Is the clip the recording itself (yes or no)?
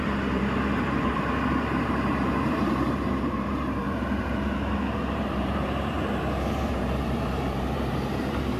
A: no